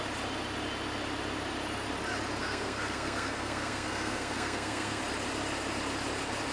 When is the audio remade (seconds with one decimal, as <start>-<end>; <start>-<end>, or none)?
2.4-5.0